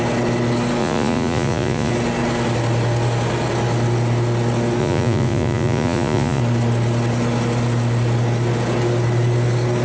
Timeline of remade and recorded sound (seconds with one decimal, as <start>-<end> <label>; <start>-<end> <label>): 0.0-0.8 recorded; 0.8-1.9 remade; 1.9-4.8 recorded; 4.8-6.4 remade; 6.4-9.8 recorded